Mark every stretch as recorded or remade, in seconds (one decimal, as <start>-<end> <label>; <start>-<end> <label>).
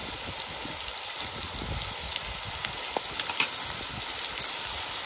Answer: 0.0-2.3 remade; 2.3-5.1 recorded